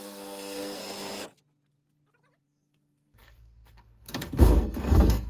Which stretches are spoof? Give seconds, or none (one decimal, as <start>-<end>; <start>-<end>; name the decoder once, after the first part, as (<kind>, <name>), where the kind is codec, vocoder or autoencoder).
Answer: 0.0-0.8 (codec, SNAC); 2.4-5.3